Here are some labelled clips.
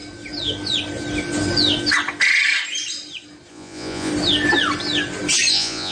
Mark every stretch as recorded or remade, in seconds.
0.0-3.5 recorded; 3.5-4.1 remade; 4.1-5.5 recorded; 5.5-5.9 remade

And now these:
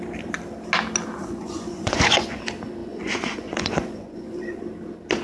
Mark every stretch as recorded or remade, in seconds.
0.0-1.2 recorded; 1.2-2.4 remade; 2.4-2.8 recorded; 2.8-4.6 remade; 4.6-5.2 recorded